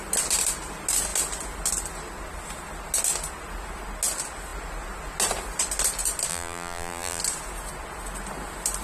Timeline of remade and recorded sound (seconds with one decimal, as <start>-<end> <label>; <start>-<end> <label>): 0.0-6.3 recorded; 6.3-7.2 remade; 7.2-8.8 recorded